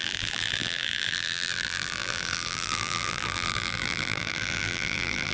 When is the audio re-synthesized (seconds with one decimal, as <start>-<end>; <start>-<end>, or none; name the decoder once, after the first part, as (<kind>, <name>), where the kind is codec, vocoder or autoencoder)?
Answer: 0.0-5.3 (vocoder, BigVGAN v2)